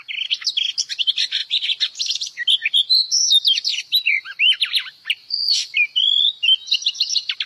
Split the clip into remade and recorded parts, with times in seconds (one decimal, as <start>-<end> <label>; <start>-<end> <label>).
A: 0.0-3.7 recorded; 3.7-6.3 remade; 6.3-7.5 recorded